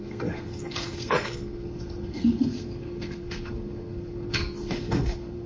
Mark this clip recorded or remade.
remade